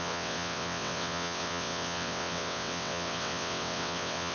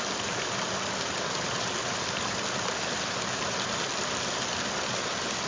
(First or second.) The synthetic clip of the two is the first